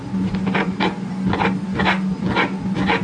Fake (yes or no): no